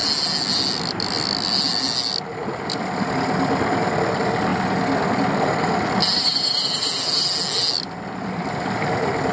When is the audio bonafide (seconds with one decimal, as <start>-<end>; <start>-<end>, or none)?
0.0-9.3